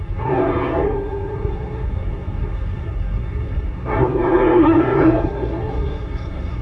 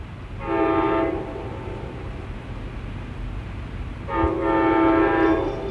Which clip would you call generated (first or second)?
first